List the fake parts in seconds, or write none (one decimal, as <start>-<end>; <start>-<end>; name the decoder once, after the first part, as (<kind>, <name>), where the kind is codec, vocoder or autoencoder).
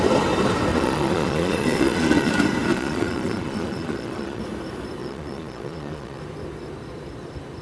0.7-2.3 (vocoder, Vocos); 2.7-4.4; 5.0-6.2